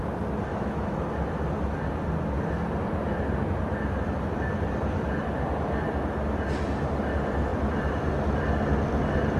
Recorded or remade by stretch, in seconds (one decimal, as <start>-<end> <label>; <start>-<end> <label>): 0.0-0.5 recorded; 0.5-1.1 remade; 1.1-9.4 recorded